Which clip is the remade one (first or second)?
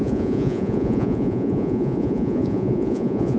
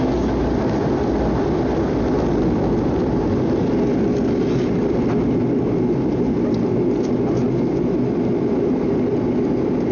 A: first